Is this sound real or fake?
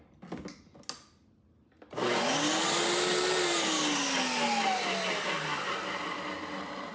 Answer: real